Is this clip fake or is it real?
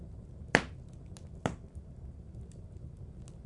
real